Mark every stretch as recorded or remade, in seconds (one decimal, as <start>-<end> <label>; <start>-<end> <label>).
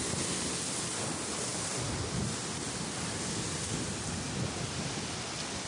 0.0-5.7 recorded